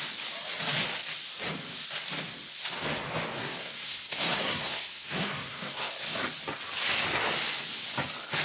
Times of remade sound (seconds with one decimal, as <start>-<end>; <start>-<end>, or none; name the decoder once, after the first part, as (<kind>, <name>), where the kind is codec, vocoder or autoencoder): 3.4-5.9 (codec, SNAC)